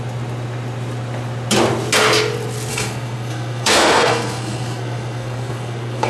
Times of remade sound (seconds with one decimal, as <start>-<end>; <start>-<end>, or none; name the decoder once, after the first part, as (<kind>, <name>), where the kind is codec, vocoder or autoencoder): 2.7-6.1 (codec, SNAC)